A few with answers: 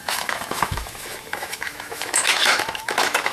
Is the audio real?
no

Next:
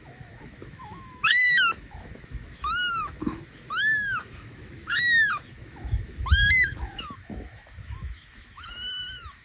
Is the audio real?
no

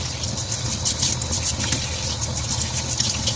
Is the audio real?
yes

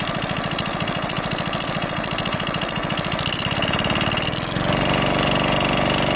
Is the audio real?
yes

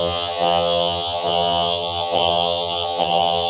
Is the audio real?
no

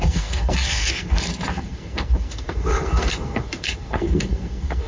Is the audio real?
no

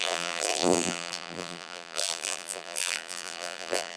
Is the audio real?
no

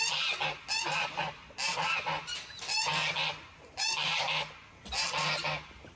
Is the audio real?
yes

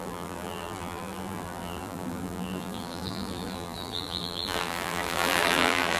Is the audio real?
no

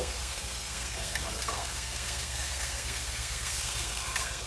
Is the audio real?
no